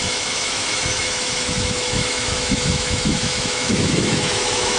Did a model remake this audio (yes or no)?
yes